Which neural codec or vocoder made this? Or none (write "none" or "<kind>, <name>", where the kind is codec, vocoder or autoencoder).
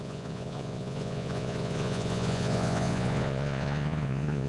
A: vocoder, Vocos